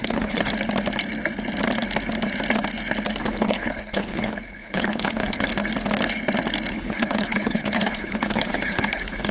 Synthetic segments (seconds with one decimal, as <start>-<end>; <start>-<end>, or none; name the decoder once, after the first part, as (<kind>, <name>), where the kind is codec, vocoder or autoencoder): 0.0-0.5 (codec, HILCodec); 3.2-5.5; 6.7-9.3